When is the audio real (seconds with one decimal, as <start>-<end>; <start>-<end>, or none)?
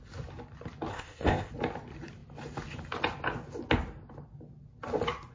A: 0.0-0.9; 1.5-5.3